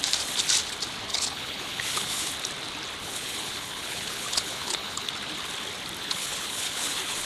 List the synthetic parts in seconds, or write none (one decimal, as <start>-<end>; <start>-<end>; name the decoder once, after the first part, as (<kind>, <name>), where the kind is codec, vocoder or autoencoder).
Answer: 1.1-2.3 (codec, HILCodec); 3.0-5.1; 6.0-7.3

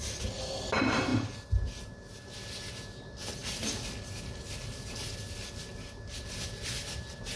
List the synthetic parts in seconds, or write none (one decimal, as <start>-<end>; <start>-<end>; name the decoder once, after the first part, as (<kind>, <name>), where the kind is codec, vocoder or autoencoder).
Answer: none

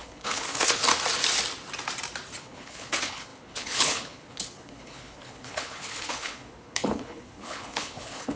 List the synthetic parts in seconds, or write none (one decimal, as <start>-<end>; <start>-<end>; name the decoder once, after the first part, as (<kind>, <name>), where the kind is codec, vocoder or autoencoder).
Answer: 0.0-0.8 (codec, HILCodec); 2.4-8.4

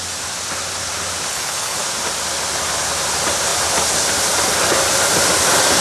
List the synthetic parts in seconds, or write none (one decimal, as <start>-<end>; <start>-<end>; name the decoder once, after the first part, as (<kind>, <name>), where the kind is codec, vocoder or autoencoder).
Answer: 1.3-1.8 (codec, HILCodec)